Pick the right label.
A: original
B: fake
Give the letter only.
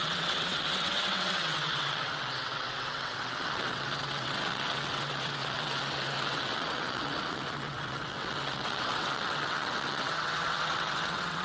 B